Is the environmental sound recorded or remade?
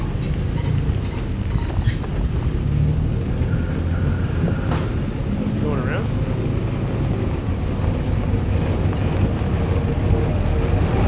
recorded